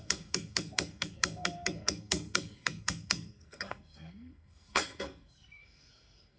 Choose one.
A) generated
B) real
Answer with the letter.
A